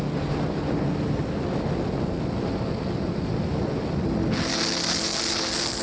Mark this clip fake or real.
real